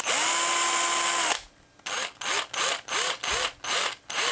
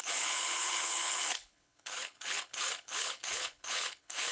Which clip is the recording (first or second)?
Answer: first